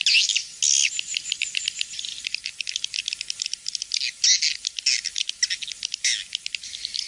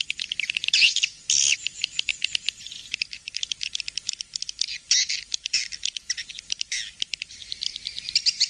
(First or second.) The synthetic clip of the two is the second